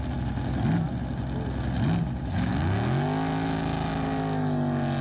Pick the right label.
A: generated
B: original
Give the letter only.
B